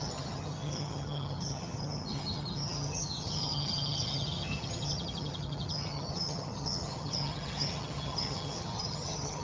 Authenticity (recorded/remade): remade